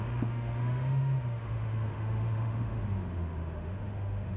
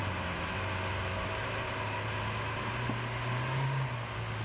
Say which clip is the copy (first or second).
first